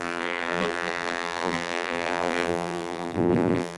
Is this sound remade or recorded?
remade